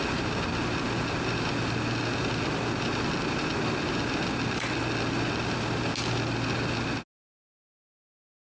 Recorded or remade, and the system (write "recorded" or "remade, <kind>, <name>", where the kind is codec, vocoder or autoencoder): recorded